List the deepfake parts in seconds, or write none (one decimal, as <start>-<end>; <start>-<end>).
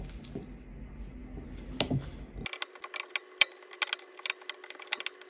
none